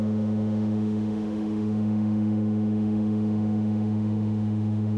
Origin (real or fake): fake